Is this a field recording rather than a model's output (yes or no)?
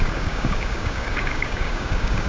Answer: no